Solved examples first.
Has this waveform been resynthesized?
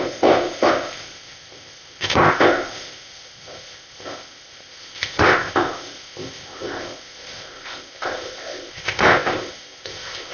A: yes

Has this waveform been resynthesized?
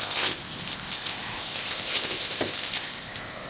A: yes